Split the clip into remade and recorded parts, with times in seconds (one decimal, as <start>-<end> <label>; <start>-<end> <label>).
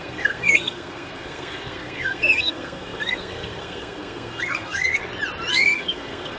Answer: 0.0-5.0 remade; 5.0-5.5 recorded; 5.5-6.4 remade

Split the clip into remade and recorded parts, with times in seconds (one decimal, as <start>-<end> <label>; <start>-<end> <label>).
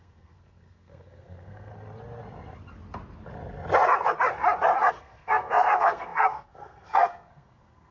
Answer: 0.0-1.7 remade; 1.7-4.9 recorded; 4.9-7.9 remade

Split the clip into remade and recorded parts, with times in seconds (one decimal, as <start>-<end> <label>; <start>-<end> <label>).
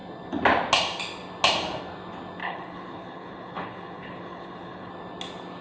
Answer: 0.0-2.4 recorded; 2.4-4.9 remade; 4.9-5.6 recorded